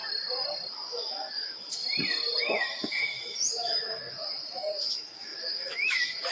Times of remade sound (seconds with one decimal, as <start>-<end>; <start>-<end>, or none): 0.7-1.8; 2.4-6.3